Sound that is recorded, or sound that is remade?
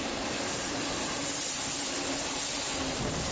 recorded